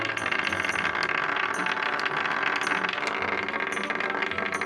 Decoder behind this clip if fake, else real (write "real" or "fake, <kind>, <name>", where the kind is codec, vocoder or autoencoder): real